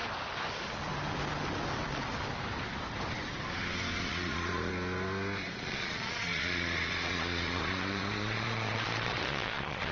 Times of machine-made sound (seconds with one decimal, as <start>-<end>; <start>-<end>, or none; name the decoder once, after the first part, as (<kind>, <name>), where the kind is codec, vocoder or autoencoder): 4.0-4.7 (vocoder, Vocos); 5.6-9.9